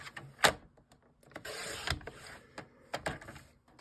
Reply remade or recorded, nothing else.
recorded